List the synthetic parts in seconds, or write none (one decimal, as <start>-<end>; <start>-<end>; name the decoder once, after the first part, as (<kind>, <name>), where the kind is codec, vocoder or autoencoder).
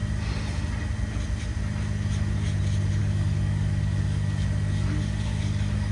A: 3.0-5.9 (codec, DAC)